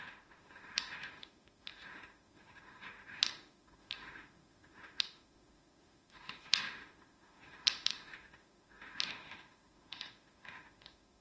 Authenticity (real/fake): fake